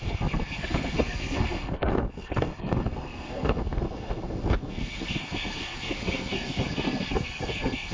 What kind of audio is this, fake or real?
fake